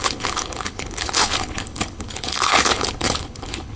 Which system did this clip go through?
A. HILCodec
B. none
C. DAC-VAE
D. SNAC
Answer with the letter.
A